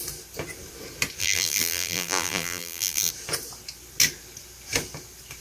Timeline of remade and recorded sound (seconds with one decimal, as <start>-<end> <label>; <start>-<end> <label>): 0.0-1.2 recorded; 1.2-3.1 remade; 3.1-5.4 recorded